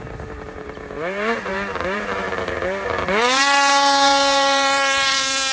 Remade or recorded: remade